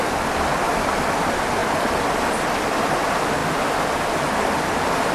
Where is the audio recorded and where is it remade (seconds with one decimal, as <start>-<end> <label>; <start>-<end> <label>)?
0.0-3.4 remade; 3.4-4.5 recorded; 4.5-5.1 remade